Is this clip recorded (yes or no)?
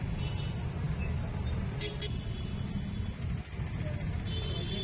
yes